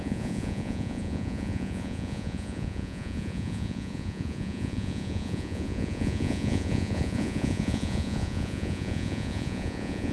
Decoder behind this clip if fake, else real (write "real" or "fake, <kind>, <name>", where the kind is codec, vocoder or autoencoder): fake, vocoder, Vocos